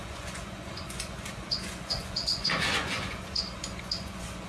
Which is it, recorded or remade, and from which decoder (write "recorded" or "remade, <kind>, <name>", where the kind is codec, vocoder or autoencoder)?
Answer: remade, vocoder, Vocos